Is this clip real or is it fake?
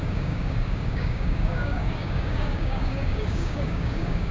fake